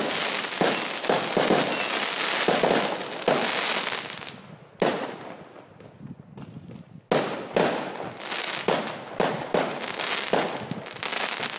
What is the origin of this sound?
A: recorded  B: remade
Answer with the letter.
A